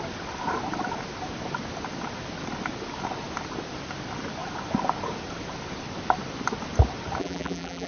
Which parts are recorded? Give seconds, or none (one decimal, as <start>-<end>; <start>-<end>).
0.0-7.2